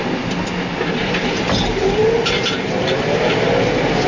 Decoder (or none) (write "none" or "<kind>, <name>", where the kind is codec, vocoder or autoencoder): none